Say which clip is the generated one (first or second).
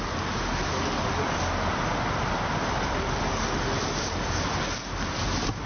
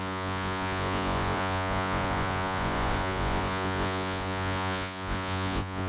second